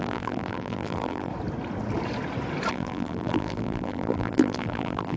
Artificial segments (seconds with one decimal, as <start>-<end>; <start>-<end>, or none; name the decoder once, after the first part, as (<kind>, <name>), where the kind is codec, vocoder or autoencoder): 0.0-1.3 (vocoder, BigVGAN v2); 2.7-5.2